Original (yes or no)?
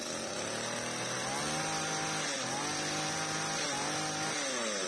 yes